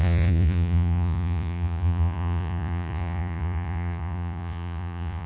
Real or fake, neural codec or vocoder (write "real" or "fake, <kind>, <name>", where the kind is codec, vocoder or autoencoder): fake, vocoder, Vocos